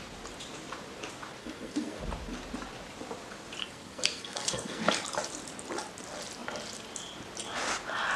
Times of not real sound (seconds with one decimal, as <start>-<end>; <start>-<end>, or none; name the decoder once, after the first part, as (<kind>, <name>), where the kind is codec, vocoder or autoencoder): 1.4-2.0 (codec, SNAC); 3.6-4.9